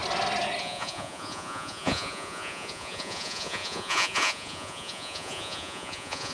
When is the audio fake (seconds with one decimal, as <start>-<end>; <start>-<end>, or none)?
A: 0.6-6.3